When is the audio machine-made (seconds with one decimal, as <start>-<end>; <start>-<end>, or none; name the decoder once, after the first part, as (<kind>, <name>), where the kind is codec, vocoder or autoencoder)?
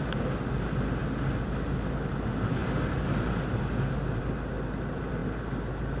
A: none